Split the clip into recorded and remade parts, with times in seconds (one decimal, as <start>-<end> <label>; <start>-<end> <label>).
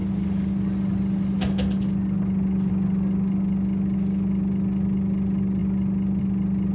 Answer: 0.0-6.7 recorded